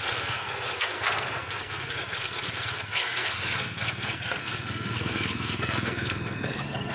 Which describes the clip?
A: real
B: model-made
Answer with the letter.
B